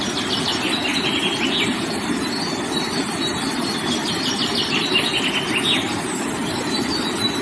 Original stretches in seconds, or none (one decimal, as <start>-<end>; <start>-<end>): 0.0-7.4